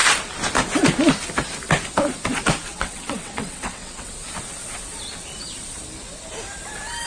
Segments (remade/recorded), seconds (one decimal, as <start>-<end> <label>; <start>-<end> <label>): 0.0-2.7 recorded; 2.7-4.1 remade; 4.1-7.1 recorded